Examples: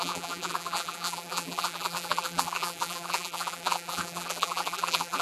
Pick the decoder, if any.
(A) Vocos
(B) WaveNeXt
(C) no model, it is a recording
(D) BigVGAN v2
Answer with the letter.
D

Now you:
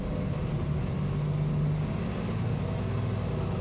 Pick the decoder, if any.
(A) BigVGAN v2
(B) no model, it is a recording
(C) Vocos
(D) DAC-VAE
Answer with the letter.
B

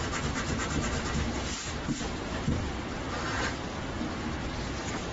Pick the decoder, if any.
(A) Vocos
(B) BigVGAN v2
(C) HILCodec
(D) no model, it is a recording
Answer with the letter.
B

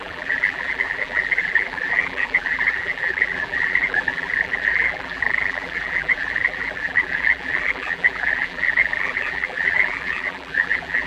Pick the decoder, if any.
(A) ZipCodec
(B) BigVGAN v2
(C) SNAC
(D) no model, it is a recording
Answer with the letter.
B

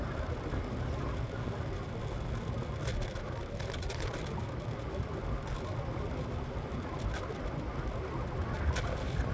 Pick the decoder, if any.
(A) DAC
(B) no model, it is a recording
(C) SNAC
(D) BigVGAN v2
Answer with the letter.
B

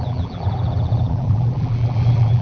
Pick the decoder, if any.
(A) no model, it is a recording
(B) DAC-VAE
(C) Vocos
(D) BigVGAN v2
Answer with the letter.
D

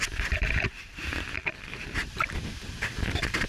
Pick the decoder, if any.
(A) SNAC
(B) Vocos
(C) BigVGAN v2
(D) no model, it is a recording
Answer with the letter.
C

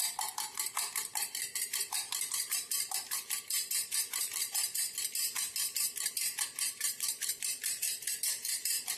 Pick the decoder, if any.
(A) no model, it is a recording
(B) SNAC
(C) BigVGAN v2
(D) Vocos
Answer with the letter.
C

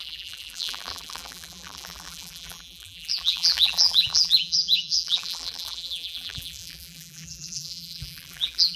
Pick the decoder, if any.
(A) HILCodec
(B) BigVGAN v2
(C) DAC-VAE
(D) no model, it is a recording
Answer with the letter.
B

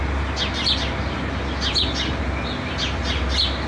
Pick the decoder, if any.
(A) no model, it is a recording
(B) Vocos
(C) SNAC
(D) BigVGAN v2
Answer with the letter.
A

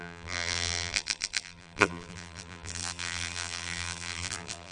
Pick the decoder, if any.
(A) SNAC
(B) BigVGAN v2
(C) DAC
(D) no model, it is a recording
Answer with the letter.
B